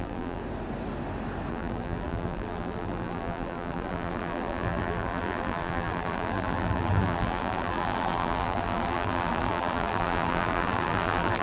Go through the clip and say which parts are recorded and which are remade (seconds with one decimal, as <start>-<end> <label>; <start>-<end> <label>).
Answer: 0.0-0.4 remade; 0.4-1.5 recorded; 1.5-11.4 remade

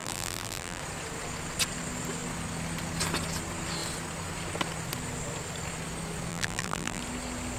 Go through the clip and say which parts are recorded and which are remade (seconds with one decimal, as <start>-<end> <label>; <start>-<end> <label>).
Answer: 0.0-0.8 remade; 0.8-6.3 recorded; 6.3-7.0 remade; 7.0-7.6 recorded

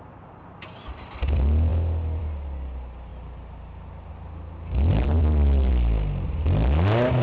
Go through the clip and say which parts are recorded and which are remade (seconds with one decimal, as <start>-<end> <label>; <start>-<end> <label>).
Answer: 0.0-4.9 recorded; 4.9-5.7 remade; 5.7-7.2 recorded

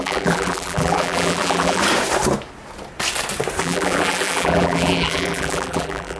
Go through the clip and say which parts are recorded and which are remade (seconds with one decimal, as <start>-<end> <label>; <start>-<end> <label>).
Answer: 0.0-1.8 remade; 1.8-3.6 recorded; 3.6-6.2 remade